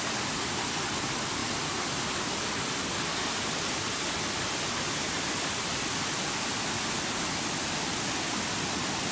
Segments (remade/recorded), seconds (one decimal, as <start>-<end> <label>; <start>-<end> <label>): 0.0-9.1 recorded